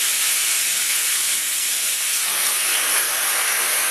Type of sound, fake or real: fake